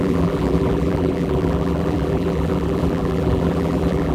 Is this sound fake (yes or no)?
yes